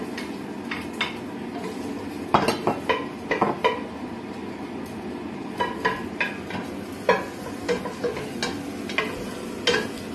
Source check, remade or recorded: recorded